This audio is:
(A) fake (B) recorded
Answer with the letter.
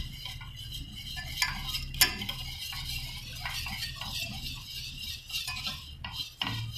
B